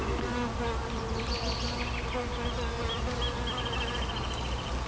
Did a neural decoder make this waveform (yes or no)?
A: no